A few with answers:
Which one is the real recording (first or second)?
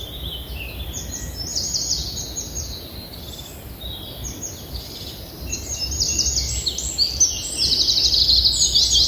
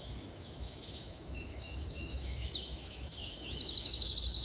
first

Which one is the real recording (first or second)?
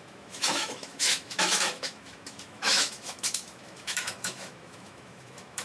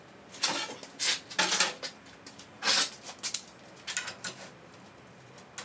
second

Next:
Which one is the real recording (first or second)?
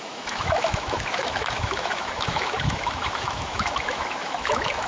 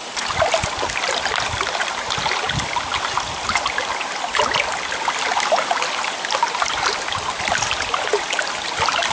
second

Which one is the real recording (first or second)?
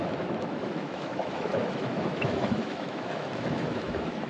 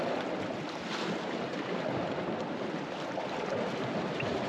second